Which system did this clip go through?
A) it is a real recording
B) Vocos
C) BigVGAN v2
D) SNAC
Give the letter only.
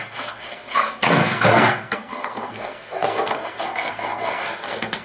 D